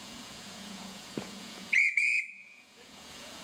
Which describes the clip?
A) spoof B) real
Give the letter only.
A